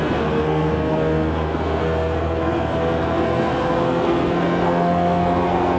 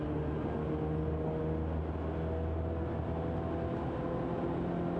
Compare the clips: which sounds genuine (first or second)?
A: second